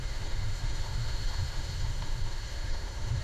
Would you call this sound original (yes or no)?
no